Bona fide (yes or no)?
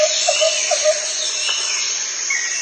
no